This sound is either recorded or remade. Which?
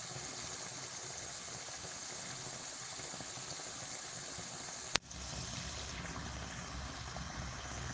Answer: recorded